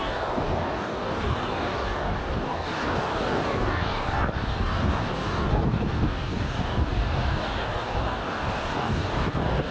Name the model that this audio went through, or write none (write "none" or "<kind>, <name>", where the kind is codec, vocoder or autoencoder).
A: codec, DAC